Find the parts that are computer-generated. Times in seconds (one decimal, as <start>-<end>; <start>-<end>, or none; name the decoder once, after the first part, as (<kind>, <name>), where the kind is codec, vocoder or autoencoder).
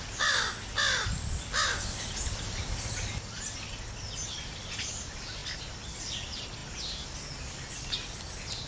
none